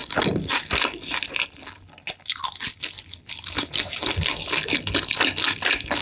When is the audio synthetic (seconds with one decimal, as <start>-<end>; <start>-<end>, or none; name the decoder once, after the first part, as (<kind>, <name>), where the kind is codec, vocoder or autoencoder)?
none